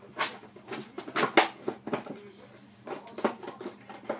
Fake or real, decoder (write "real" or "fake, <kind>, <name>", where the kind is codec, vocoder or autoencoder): real